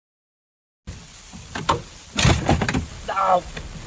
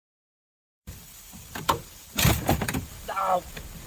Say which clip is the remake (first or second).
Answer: second